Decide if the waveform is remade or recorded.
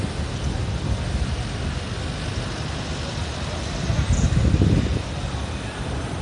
recorded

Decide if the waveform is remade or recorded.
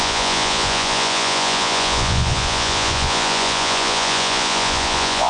remade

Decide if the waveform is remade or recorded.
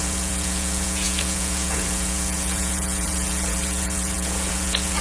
remade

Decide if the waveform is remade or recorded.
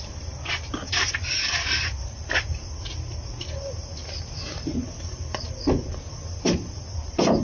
recorded